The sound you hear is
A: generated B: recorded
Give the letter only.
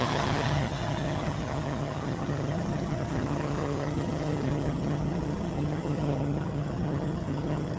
A